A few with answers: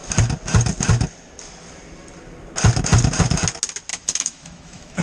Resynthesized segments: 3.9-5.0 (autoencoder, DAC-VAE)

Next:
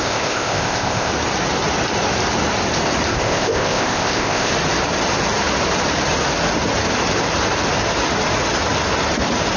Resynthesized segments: 0.0-1.1 (codec, ZipCodec); 3.1-4.5